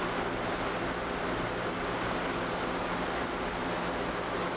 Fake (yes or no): no